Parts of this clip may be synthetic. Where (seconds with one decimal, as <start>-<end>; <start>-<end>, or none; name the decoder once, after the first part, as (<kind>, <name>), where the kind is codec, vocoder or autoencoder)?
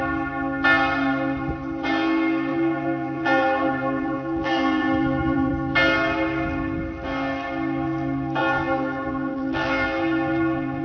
2.5-5.5 (vocoder, BigVGAN v2); 8.4-10.8